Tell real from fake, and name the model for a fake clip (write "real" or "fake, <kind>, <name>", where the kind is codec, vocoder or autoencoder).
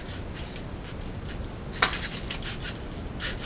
real